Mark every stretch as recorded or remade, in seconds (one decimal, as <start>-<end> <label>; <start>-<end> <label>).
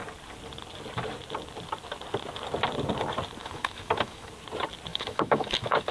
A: 0.0-3.4 recorded; 3.4-4.3 remade; 4.3-4.9 recorded; 4.9-5.9 remade